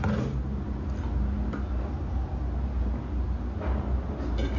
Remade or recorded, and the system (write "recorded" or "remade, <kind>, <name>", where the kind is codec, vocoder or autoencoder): recorded